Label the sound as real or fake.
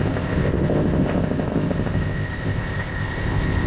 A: fake